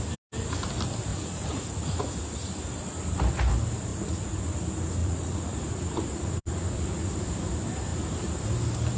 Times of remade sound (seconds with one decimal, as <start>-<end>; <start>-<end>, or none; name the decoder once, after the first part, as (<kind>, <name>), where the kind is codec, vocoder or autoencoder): 1.1-2.0 (vocoder, Vocos); 3.9-4.4; 5.0-7.2